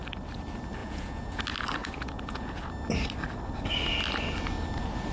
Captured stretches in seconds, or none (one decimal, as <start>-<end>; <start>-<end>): 0.0-0.8; 1.4-1.8; 2.6-5.1